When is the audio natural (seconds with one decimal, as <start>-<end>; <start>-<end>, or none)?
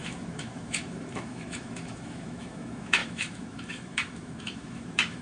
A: none